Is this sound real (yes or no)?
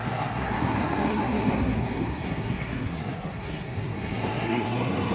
no